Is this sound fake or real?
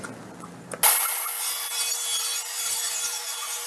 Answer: real